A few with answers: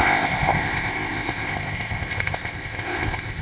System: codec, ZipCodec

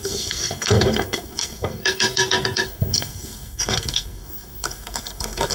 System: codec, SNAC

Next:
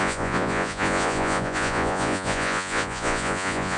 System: vocoder, Vocos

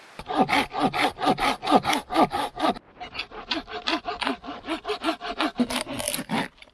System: none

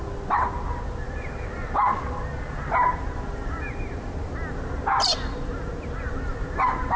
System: none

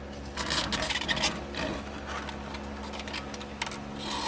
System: none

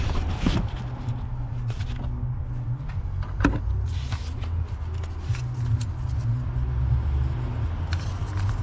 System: none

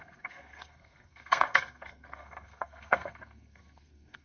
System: codec, SNAC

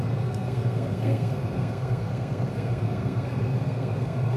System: codec, SNAC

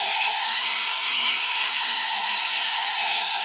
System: codec, SNAC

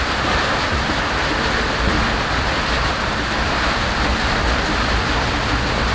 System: vocoder, BigVGAN v2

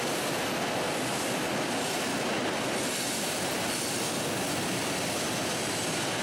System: none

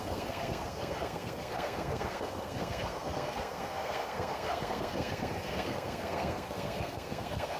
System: codec, SNAC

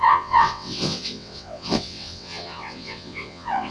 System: vocoder, WaveNeXt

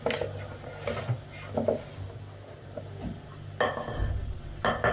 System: none